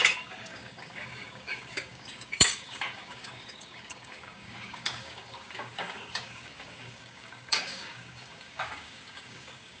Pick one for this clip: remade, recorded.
remade